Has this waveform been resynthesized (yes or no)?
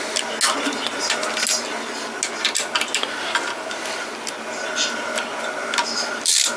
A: no